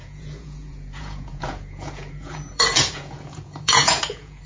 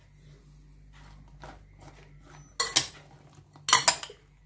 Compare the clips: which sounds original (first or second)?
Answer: second